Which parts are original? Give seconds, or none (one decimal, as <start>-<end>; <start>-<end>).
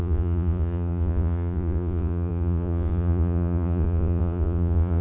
none